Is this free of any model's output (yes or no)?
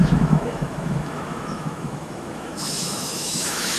no